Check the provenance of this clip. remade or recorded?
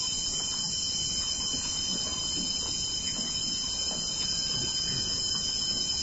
remade